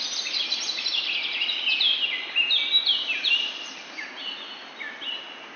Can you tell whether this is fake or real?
real